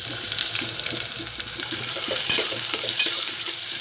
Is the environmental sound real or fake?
fake